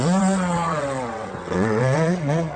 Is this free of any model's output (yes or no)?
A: no